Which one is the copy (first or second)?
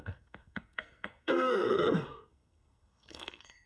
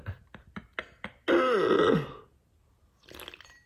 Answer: first